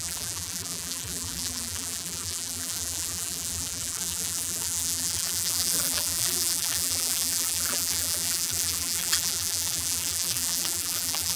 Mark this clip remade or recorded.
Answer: remade